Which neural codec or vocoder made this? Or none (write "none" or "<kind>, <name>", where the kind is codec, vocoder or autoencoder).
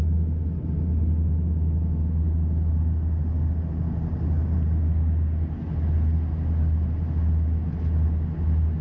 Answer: none